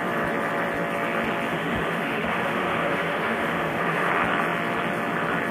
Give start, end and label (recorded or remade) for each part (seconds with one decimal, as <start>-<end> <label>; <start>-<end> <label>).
0.0-1.5 recorded; 1.5-4.1 remade; 4.1-5.5 recorded